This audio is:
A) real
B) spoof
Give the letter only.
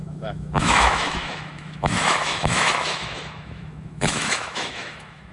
B